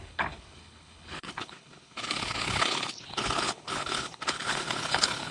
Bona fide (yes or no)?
no